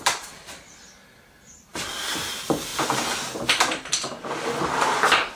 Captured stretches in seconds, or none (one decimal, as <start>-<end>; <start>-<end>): 2.7-5.4